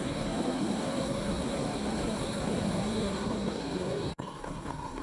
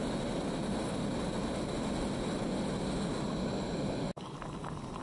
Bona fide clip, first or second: second